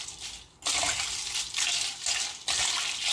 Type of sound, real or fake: real